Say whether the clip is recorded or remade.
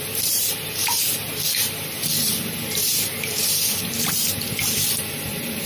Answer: remade